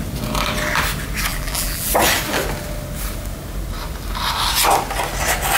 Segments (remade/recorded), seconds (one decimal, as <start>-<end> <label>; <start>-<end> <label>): 0.0-1.3 recorded; 1.3-1.9 remade; 1.9-5.6 recorded

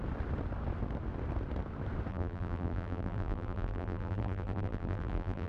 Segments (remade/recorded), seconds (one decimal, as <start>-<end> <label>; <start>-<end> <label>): 0.0-2.1 recorded; 2.1-5.5 remade

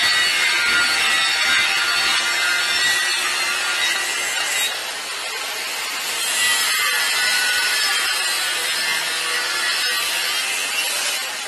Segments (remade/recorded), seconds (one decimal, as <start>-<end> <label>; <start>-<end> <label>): 0.0-7.3 recorded; 7.3-7.9 remade; 7.9-11.5 recorded